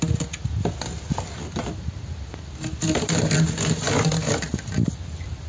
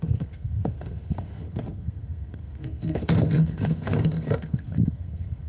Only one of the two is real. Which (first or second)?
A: first